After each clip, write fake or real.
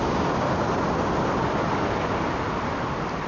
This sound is real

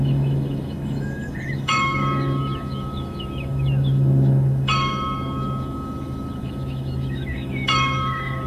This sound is fake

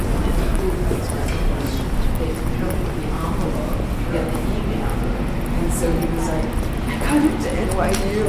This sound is real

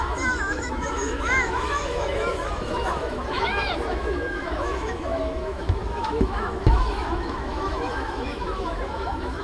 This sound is fake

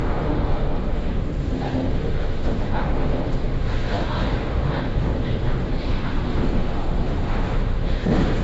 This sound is fake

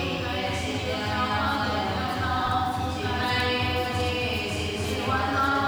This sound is real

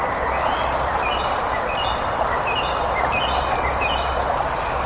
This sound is real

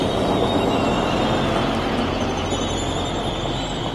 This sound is real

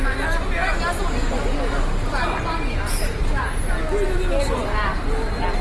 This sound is real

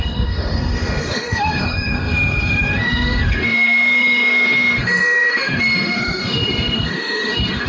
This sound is fake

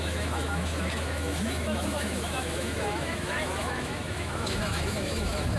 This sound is fake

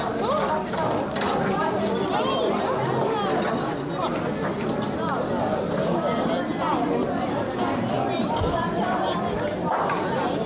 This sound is real